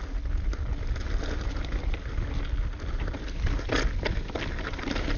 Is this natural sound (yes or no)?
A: yes